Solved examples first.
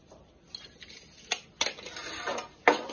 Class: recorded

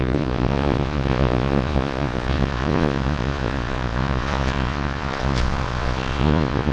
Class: remade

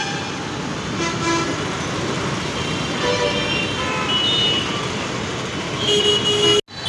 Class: recorded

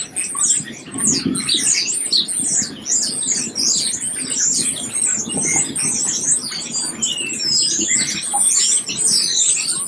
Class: recorded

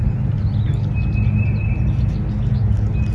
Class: recorded